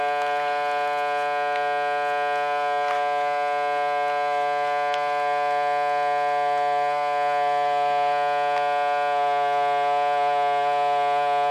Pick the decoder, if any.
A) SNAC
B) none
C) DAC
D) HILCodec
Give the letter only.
B